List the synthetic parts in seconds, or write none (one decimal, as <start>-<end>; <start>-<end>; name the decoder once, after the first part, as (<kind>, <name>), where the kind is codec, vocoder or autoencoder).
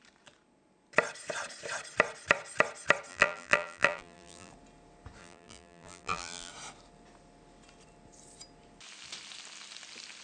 3.1-4.5 (vocoder, BigVGAN v2); 5.2-6.5